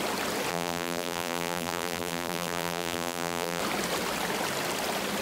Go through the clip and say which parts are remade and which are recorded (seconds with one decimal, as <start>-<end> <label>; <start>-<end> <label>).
0.0-0.5 recorded; 0.5-3.6 remade; 3.6-5.2 recorded